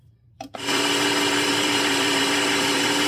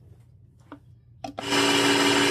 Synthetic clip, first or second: first